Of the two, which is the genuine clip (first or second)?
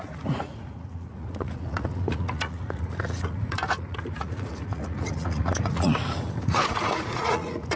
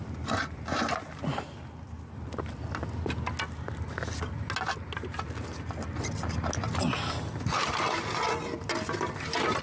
second